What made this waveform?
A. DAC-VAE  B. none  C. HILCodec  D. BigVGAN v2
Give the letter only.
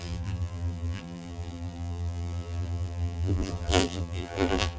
D